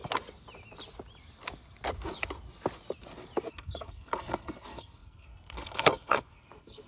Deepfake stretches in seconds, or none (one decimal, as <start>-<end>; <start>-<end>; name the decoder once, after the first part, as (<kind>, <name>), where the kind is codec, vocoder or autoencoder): 3.5-6.9 (codec, SNAC)